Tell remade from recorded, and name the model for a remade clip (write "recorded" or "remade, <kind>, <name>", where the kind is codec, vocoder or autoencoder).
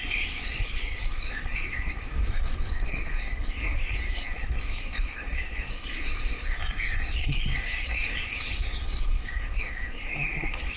remade, codec, SNAC